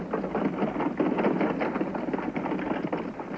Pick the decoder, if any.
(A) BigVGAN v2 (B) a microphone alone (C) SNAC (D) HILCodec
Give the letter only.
B